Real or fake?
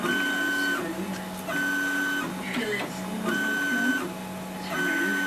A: real